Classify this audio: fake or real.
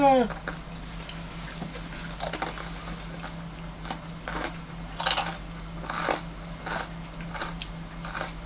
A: real